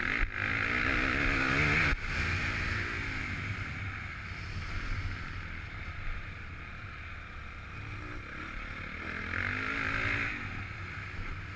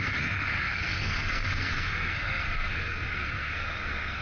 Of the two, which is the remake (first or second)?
second